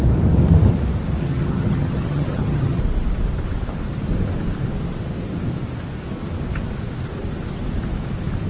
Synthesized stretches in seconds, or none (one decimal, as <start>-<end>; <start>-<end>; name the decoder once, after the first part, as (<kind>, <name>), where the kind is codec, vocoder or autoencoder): 1.2-2.8 (vocoder, HiFi-GAN)